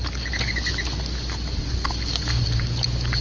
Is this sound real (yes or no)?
yes